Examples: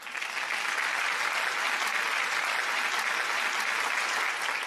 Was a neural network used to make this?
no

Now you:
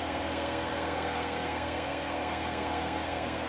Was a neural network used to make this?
yes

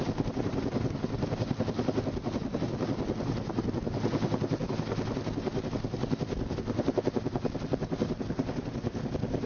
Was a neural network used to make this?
no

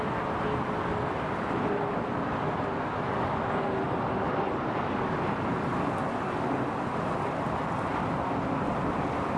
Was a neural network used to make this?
no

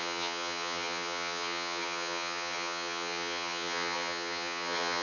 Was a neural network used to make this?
yes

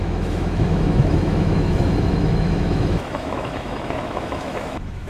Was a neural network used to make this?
yes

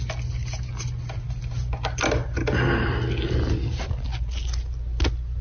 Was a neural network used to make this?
no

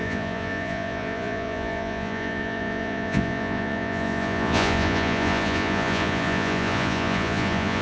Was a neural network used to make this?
yes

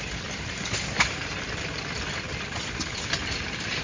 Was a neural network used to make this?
yes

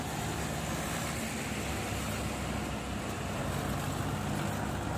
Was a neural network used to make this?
no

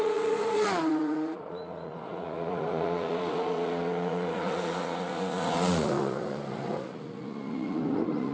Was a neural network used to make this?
yes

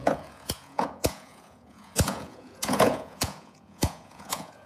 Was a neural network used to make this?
yes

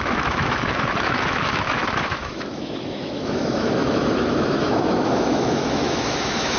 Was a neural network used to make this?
yes